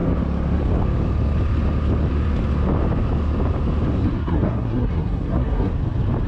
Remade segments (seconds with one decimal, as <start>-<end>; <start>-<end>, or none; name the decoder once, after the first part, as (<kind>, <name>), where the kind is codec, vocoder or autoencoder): 4.0-5.7 (codec, SNAC)